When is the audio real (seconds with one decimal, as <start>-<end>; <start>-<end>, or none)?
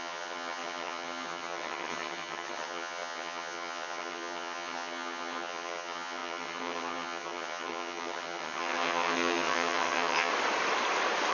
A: 10.3-11.3